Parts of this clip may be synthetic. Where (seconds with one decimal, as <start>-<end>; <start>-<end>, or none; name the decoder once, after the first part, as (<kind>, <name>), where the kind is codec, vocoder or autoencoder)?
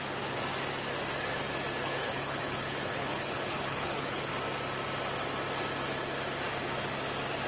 1.8-4.3 (codec, HILCodec)